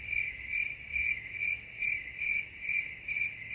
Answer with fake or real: real